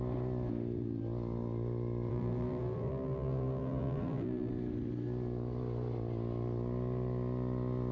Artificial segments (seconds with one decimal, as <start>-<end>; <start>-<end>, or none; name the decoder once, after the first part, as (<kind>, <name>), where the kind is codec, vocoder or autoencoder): 2.1-4.5 (vocoder, BigVGAN v2)